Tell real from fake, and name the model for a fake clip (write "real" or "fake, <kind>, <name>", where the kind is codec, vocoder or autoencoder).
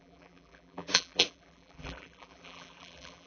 fake, vocoder, BigVGAN v2